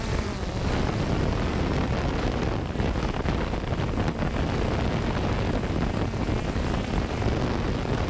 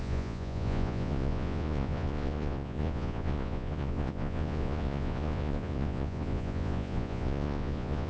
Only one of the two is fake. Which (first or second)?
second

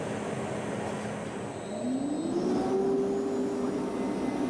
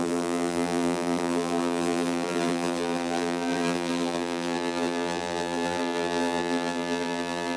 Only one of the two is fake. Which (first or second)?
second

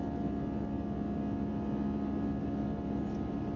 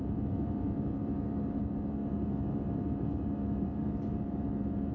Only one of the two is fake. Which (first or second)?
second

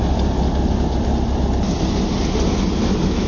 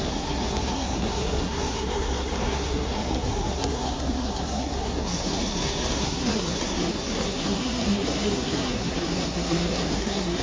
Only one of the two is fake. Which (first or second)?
second